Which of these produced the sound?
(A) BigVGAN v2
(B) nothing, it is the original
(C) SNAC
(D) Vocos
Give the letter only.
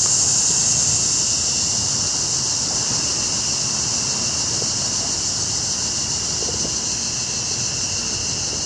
B